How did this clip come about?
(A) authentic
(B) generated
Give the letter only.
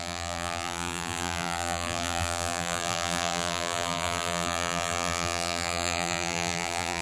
B